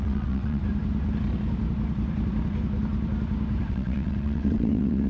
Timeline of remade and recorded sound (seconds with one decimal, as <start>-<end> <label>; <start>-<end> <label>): 0.0-0.6 remade; 0.6-3.7 recorded; 3.7-5.1 remade